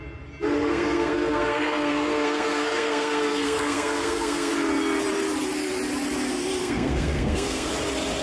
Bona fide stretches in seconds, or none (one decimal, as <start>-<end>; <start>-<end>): 0.0-0.7; 4.5-6.6; 7.7-8.2